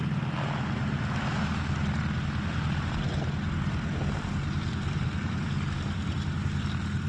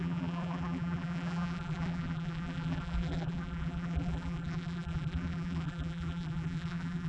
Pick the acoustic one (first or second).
first